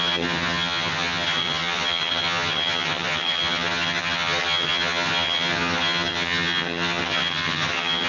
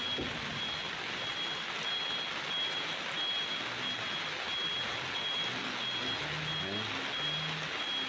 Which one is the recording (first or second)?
second